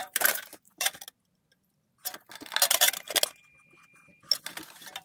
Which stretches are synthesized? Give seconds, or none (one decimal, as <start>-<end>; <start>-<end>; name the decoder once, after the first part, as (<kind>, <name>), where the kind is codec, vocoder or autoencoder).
0.0-0.9 (vocoder, BigVGAN v2)